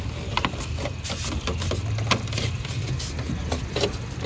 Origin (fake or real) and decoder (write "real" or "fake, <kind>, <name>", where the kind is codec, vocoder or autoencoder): real